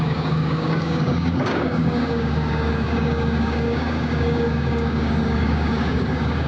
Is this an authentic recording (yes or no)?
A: no